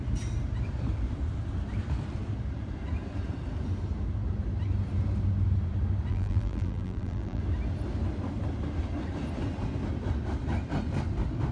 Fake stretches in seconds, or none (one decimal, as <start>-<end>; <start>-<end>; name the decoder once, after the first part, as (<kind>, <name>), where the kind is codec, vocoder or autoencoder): 6.1-7.4 (vocoder, BigVGAN v2)